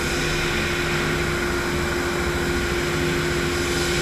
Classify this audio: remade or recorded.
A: recorded